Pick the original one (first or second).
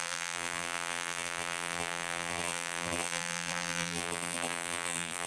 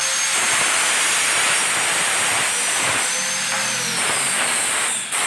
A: second